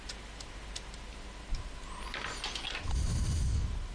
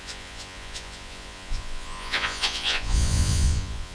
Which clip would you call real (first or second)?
first